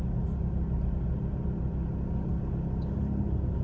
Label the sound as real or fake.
real